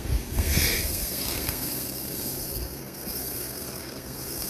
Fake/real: fake